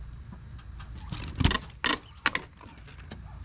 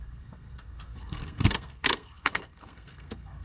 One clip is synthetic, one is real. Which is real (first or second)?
first